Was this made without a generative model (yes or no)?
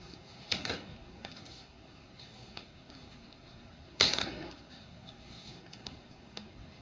no